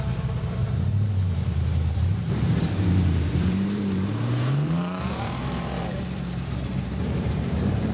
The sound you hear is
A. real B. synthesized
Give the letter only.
B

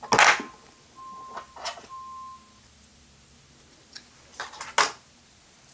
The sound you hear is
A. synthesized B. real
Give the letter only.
B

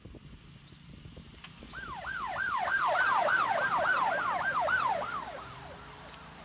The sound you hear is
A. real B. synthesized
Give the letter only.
A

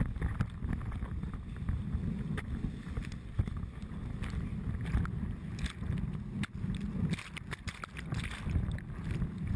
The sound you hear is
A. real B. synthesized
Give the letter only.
A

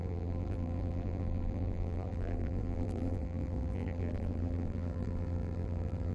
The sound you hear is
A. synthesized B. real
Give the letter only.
A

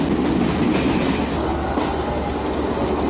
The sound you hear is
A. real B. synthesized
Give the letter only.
A